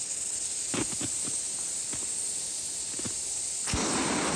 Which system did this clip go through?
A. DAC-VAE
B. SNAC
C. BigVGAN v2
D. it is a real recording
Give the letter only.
D